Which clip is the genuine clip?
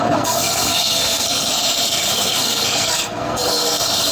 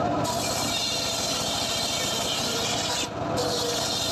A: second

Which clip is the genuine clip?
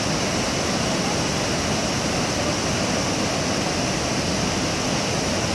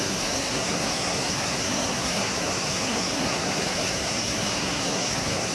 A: first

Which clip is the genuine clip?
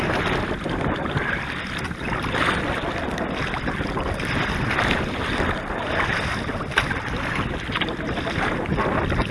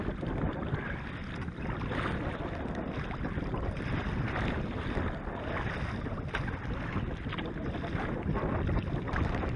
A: second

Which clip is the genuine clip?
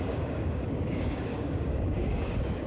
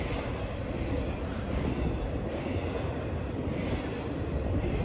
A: second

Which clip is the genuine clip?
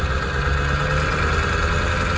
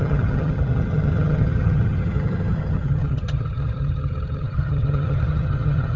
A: first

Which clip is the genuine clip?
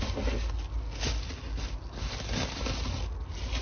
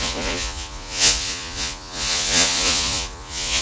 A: first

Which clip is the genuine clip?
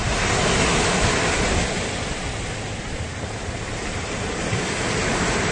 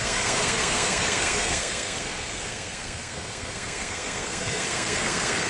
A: first